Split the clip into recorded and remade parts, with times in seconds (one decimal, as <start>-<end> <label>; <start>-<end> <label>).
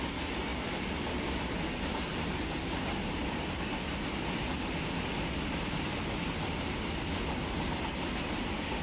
0.0-8.8 recorded